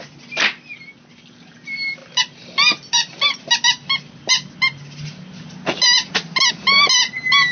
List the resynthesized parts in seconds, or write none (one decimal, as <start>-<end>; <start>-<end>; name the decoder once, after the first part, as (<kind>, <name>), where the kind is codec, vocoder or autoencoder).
none